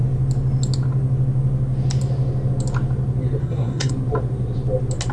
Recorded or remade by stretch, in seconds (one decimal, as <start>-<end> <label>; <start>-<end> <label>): 0.0-3.4 recorded; 3.4-3.9 remade; 3.9-5.1 recorded